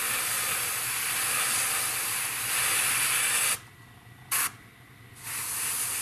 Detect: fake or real real